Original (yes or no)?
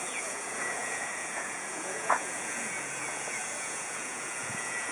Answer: no